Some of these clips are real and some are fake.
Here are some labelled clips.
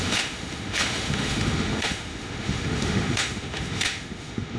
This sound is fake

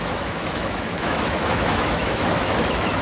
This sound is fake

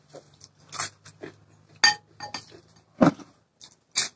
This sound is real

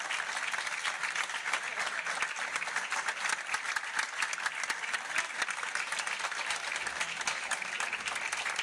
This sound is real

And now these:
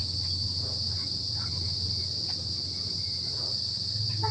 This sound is real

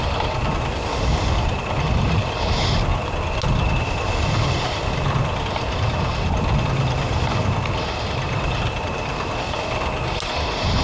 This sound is real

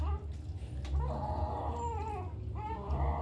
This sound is real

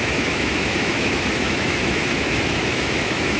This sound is fake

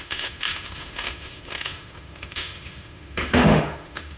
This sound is fake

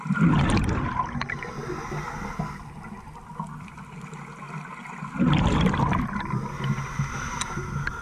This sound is real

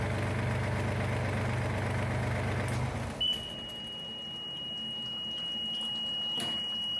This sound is real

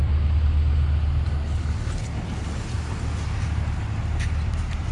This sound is real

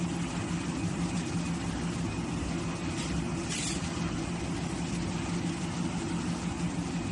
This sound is real